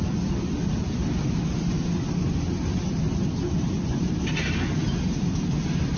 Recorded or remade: recorded